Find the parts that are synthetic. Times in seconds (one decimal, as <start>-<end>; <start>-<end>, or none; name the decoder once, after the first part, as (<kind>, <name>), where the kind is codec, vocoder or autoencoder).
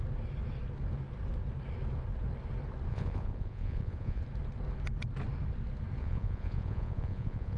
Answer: 2.9-4.2 (vocoder, Vocos); 6.0-7.6